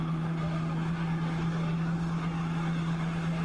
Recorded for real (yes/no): yes